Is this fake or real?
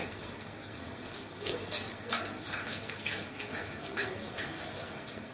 fake